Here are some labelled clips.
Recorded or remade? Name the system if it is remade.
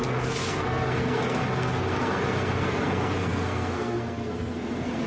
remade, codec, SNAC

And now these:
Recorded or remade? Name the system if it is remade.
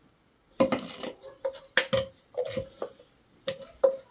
recorded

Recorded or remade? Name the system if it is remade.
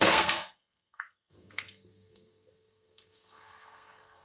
remade, codec, SNAC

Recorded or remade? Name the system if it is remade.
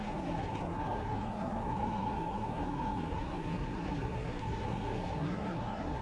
remade, codec, SNAC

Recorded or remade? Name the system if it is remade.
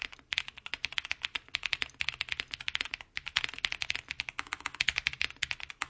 recorded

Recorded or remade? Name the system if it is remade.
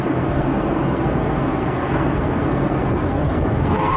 remade, codec, SNAC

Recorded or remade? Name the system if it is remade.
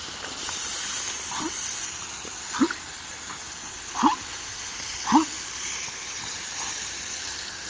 recorded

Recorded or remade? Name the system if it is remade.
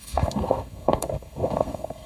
remade, codec, SNAC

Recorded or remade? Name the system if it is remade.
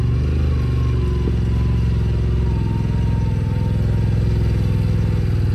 recorded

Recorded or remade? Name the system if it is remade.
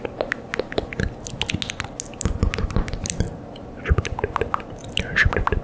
recorded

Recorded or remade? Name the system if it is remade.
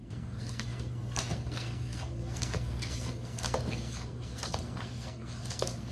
remade, codec, SNAC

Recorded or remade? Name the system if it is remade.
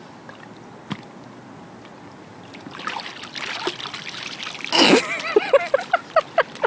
recorded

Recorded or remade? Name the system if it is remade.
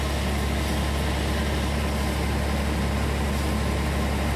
recorded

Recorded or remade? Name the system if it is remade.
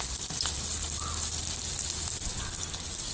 recorded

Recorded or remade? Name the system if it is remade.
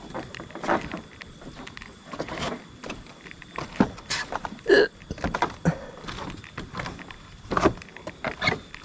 recorded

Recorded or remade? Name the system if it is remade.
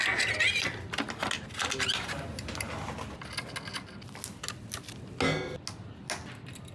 recorded